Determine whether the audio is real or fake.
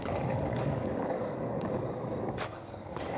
fake